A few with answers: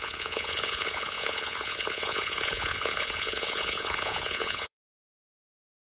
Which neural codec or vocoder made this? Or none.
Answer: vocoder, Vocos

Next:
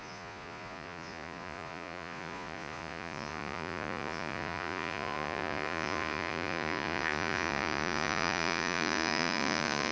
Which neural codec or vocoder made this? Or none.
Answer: vocoder, Vocos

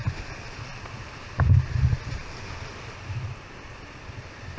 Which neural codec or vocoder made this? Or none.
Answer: none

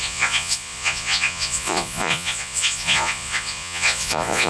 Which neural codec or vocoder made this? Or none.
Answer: vocoder, Vocos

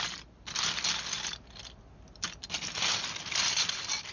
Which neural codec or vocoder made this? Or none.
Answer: none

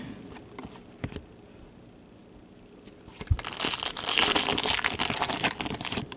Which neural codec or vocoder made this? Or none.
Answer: none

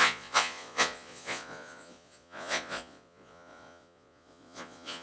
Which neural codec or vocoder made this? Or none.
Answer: vocoder, Vocos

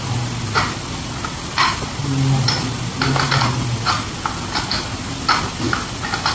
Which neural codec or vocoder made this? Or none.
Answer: none